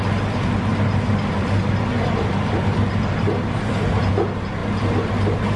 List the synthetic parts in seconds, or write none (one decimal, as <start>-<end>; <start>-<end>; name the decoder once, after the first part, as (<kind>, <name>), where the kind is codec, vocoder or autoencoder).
0.7-4.1 (vocoder, BigVGAN v2)